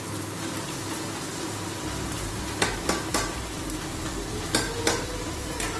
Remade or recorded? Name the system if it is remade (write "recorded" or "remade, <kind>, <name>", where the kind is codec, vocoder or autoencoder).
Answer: recorded